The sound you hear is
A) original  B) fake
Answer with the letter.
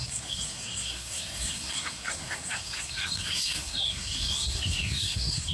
B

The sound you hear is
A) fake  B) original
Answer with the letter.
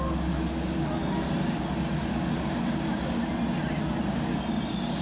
B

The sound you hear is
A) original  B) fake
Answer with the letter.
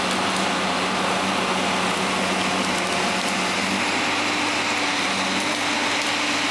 A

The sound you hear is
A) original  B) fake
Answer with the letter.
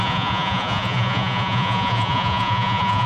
B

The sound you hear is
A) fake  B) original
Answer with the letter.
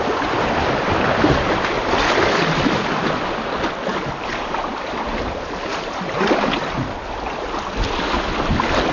B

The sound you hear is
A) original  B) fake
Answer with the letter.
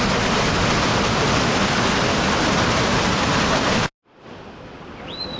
A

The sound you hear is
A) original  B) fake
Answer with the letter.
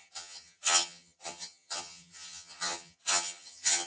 B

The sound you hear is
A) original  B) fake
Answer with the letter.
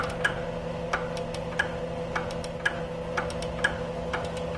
A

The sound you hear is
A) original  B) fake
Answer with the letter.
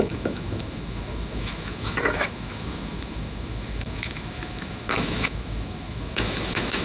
B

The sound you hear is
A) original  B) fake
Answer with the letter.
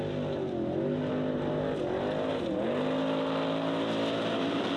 A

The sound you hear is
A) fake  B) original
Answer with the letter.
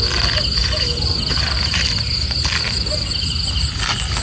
B